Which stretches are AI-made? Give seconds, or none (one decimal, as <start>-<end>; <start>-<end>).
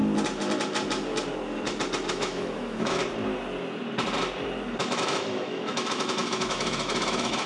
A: 2.1-3.0; 4.8-7.5